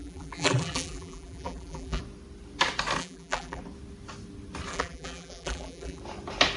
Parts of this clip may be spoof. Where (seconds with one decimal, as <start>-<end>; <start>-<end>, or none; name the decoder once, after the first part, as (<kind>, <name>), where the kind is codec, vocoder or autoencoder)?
0.0-2.0 (vocoder, BigVGAN v2); 3.0-3.6; 4.7-6.0

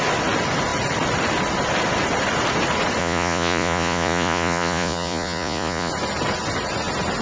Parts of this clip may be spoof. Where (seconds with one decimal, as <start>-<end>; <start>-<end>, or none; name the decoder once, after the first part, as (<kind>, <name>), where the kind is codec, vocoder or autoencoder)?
3.0-5.9 (vocoder, Vocos)